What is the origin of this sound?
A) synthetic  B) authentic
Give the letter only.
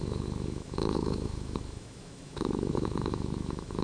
A